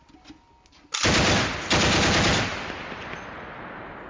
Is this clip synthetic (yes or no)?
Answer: no